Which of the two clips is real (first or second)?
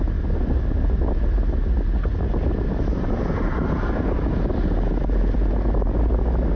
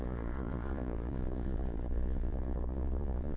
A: first